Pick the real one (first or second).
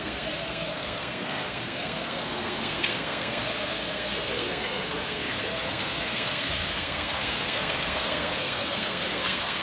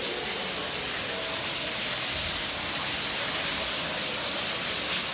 second